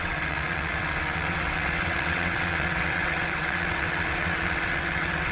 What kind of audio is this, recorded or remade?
remade